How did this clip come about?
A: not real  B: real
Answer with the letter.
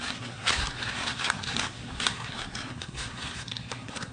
A